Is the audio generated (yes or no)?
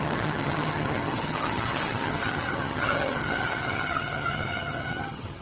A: yes